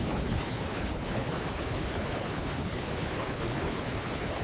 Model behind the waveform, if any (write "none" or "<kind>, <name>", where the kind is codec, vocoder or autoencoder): codec, HILCodec